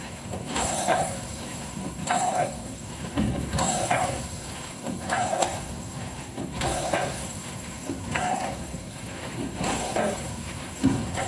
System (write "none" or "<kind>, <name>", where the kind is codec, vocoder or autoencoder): codec, SNAC